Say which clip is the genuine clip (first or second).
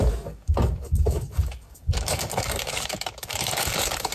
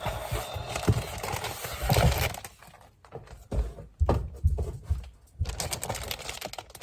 second